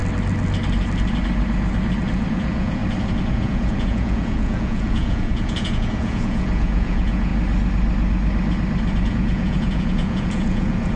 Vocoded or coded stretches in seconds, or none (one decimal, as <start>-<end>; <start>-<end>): 2.3-2.8; 3.3-7.3; 9.1-11.0